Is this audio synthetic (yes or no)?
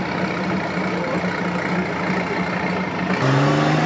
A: no